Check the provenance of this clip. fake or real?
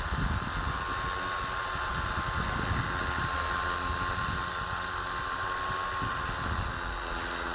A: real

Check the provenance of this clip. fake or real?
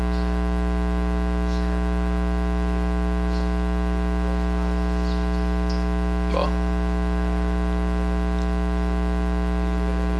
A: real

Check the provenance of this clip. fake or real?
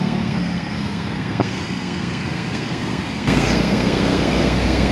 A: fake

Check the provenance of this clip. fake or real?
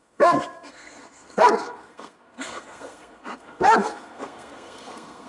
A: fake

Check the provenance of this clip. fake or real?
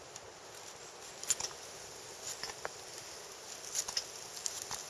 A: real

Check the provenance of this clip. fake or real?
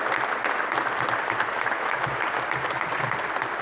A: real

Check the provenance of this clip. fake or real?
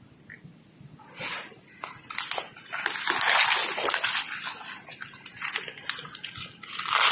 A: real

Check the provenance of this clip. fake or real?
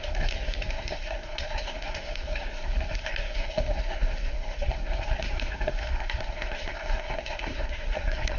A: fake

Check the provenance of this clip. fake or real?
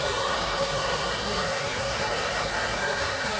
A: fake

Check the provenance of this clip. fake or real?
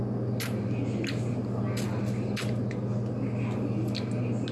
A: real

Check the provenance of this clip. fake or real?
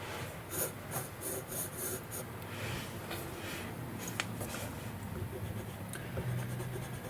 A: real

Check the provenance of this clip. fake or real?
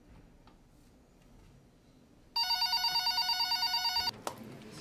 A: real